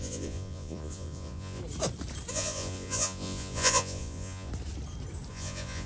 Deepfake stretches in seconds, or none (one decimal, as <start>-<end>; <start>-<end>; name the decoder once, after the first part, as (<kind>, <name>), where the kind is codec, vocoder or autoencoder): 0.0-1.6 (vocoder, Vocos); 2.3-4.5; 5.3-5.9